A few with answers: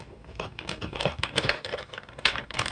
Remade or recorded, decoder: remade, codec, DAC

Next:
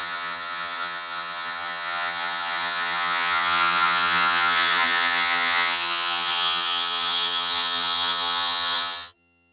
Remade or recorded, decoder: remade, vocoder, HiFi-GAN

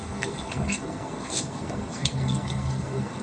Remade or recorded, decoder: remade, codec, SNAC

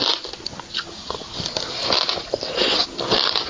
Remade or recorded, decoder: recorded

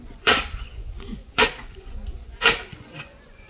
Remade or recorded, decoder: remade, vocoder, Vocos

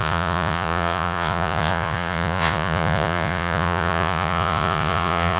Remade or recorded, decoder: remade, vocoder, Vocos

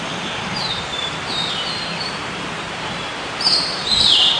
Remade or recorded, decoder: remade, vocoder, BigVGAN v2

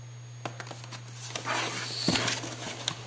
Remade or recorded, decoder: recorded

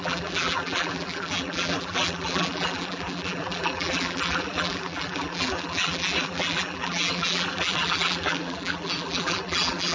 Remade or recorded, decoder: remade, vocoder, BigVGAN v2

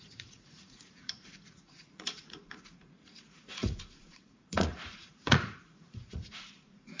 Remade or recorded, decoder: remade, vocoder, Vocos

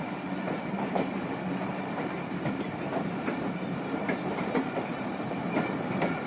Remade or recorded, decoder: remade, vocoder, BigVGAN v2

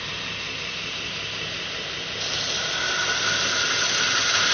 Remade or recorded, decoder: recorded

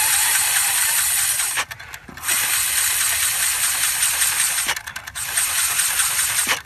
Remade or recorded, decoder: recorded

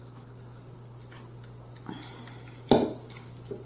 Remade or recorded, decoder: recorded